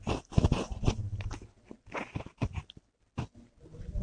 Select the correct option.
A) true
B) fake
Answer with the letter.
A